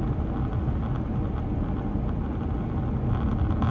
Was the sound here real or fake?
real